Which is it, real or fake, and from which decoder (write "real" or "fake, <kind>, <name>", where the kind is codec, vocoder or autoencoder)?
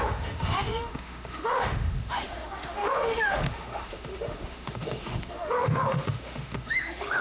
fake, autoencoder, DAC-VAE